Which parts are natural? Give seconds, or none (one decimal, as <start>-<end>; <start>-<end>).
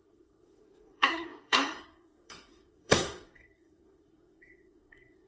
none